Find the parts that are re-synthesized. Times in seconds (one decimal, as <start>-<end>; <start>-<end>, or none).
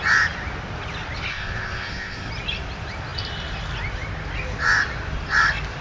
1.3-2.3